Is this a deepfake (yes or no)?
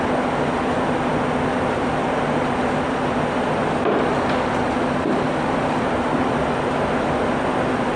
no